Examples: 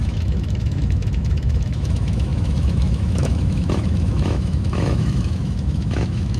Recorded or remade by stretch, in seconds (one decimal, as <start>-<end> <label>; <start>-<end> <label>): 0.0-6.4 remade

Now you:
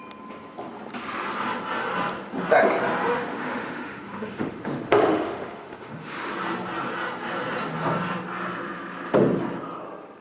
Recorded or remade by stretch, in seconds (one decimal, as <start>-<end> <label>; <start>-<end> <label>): 0.0-3.1 recorded; 3.1-6.3 remade; 6.3-10.2 recorded

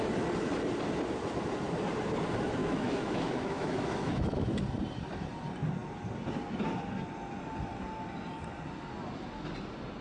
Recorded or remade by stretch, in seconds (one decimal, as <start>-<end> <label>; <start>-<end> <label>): 0.0-2.6 recorded; 2.6-4.6 remade; 4.6-10.0 recorded